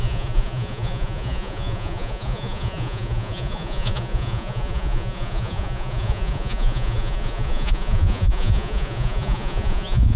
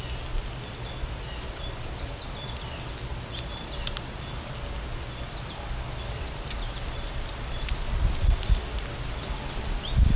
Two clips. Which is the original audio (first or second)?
second